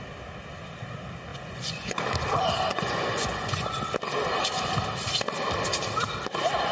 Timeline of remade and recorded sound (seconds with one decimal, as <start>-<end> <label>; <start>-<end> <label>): 0.0-1.3 recorded; 1.3-2.0 remade; 2.0-2.7 recorded; 2.7-3.8 remade; 3.8-6.7 recorded